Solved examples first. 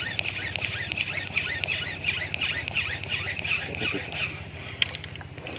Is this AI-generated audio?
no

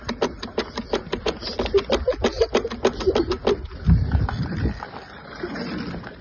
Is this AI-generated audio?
no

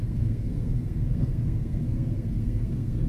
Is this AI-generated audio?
yes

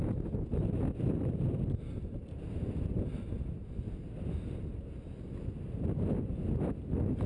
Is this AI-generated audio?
no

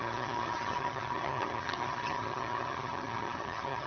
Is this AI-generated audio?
yes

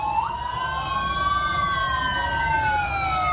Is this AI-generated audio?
no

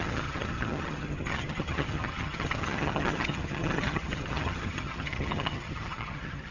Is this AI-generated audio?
yes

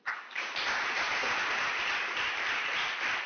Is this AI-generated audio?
yes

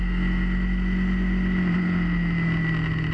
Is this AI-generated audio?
no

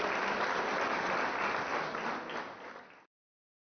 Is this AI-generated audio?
no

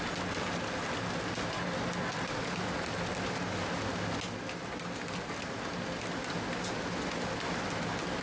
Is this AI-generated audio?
no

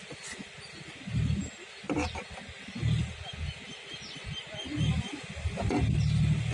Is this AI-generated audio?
no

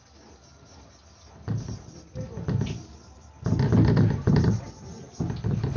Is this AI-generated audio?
no